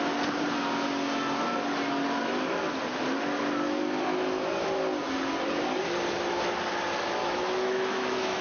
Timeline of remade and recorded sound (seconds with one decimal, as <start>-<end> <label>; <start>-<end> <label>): 0.0-7.2 recorded; 7.2-8.4 remade